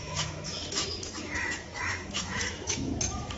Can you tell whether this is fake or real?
fake